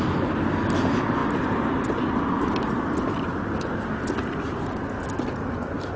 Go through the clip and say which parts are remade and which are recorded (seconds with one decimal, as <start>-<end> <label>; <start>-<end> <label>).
0.0-6.0 recorded

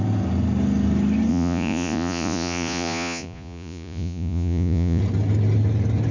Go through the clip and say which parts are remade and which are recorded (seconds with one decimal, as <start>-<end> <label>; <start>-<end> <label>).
0.0-1.3 recorded; 1.3-5.0 remade; 5.0-6.1 recorded

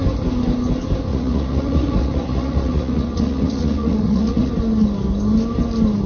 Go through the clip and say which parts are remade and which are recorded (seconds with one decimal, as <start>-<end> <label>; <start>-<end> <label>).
0.0-1.1 recorded; 1.1-4.5 remade; 4.5-6.1 recorded

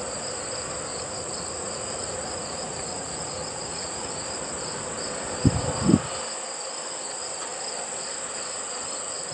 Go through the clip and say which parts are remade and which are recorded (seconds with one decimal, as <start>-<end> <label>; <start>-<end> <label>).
0.0-0.9 recorded; 0.9-4.1 remade; 4.1-9.3 recorded